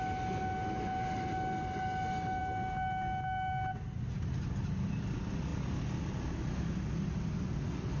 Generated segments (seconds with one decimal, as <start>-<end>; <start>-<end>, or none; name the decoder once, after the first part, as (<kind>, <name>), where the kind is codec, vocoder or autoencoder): none

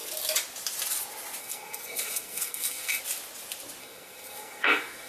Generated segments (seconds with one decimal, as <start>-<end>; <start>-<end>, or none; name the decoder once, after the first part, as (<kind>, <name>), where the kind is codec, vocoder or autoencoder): 1.4-3.0 (codec, SNAC); 3.8-5.1

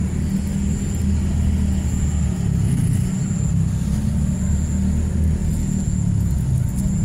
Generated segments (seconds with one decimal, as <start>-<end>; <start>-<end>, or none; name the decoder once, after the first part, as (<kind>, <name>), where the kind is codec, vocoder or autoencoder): none

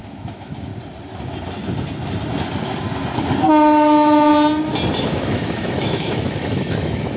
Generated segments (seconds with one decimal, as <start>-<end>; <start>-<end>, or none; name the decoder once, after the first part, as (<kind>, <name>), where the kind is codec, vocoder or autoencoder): 0.0-0.7 (autoencoder, DAC-VAE); 5.0-7.2

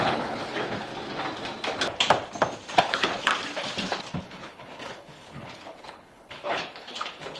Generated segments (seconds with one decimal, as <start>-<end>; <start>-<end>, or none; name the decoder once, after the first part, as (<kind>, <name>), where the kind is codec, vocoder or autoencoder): 0.0-0.9 (codec, HILCodec); 2.8-3.3; 4.2-7.4

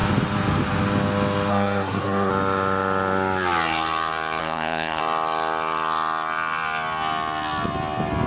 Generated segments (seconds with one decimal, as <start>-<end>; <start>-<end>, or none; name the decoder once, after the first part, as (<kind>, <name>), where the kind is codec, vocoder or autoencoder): 1.5-2.3 (codec, SNAC); 4.4-5.0

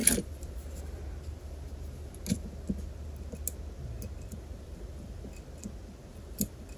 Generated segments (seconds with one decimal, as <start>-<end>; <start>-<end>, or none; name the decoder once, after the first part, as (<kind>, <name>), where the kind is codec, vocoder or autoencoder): 0.0-1.0 (vocoder, BigVGAN v2); 4.3-5.3; 6.1-6.8

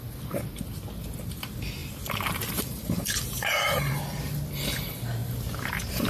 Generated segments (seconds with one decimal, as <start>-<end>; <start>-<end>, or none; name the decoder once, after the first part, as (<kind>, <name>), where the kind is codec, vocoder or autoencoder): 1.8-3.9 (vocoder, BigVGAN v2); 5.2-6.1